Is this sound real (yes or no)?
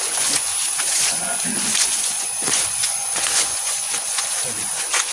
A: no